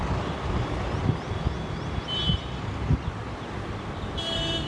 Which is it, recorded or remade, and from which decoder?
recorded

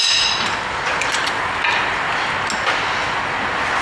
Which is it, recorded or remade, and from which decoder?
recorded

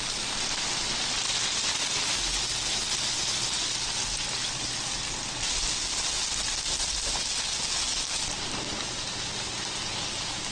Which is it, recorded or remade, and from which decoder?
recorded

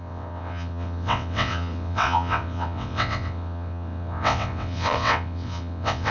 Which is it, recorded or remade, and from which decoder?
remade, vocoder, WaveNeXt